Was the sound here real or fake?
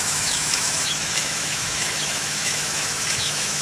fake